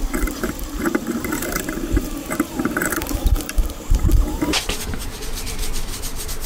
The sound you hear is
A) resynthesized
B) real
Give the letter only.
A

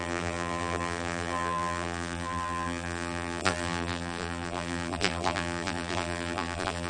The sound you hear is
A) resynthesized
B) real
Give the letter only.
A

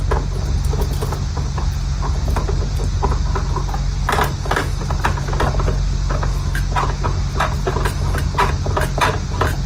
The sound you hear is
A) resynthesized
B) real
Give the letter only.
B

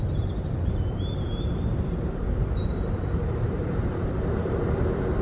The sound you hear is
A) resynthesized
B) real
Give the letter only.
A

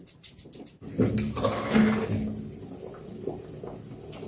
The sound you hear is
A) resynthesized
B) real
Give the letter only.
B